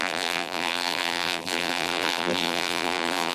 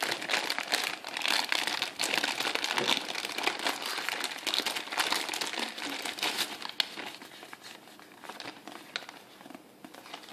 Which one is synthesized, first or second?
first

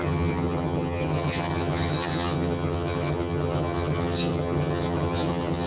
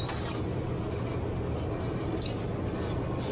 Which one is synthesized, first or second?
first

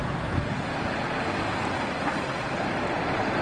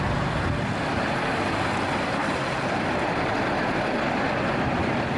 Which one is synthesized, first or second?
first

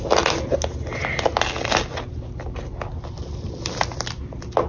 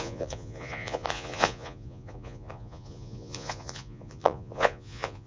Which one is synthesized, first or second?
second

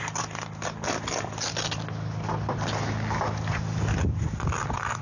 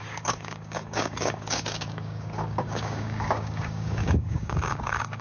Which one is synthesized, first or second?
second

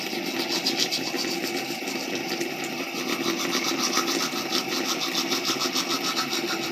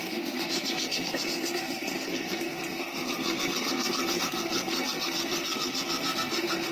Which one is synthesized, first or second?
second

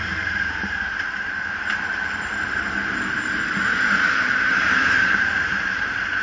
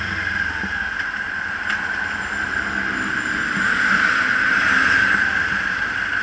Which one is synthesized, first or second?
first